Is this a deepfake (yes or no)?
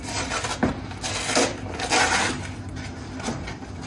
no